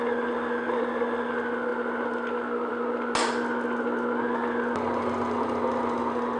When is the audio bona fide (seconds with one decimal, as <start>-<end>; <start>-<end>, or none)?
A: 0.0-6.4

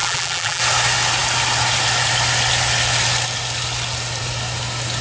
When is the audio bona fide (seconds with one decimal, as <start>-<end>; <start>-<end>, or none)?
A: 0.6-5.0

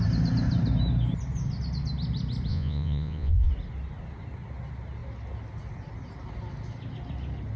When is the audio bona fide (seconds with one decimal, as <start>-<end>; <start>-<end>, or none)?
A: 0.0-2.5; 3.5-7.6

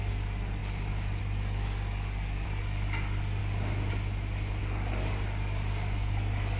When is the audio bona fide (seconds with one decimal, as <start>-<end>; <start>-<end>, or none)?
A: 3.4-4.6